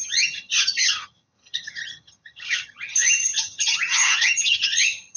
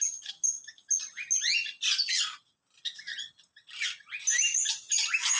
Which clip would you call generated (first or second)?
first